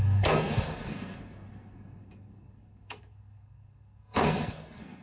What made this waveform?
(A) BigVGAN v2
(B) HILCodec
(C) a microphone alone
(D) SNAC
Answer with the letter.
D